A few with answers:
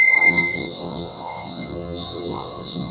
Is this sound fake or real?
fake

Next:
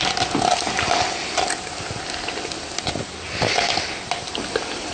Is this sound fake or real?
real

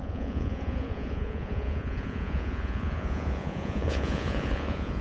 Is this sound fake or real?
fake